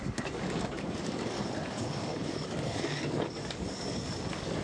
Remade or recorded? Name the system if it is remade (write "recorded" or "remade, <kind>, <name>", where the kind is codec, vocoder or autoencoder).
remade, codec, DAC